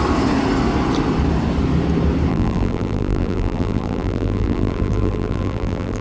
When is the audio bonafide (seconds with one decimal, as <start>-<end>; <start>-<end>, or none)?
0.0-2.3